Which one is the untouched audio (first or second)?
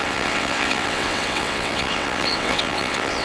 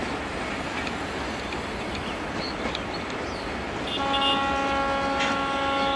second